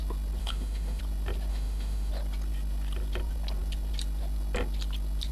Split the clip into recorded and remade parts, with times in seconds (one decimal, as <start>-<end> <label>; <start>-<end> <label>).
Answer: 0.0-0.4 recorded; 0.4-1.0 remade; 1.0-1.5 recorded; 1.5-2.1 remade; 2.1-5.3 recorded